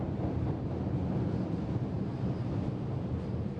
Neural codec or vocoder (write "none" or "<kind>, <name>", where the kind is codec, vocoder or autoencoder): none